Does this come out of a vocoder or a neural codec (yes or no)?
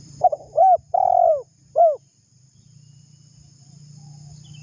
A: no